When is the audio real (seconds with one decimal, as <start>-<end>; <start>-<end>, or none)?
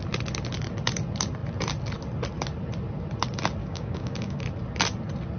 0.0-3.6; 4.4-5.4